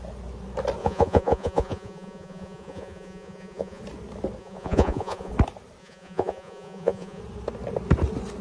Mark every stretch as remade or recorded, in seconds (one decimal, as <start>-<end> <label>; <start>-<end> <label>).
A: 0.0-0.8 recorded; 0.8-3.8 remade; 3.8-4.4 recorded; 4.4-5.3 remade; 5.3-5.8 recorded; 5.8-7.2 remade; 7.2-8.4 recorded